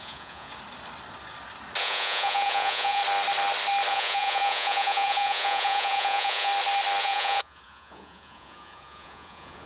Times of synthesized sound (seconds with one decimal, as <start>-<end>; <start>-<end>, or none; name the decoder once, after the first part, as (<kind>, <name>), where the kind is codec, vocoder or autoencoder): 0.0-0.5 (vocoder, Vocos); 1.8-3.0; 3.9-6.5; 7.0-9.7